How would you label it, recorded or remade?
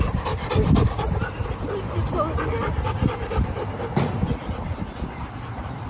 remade